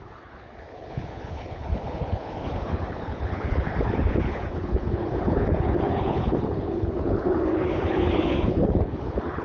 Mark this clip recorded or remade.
remade